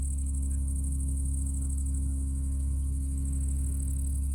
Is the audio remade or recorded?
recorded